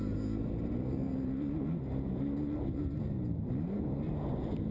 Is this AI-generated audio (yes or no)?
no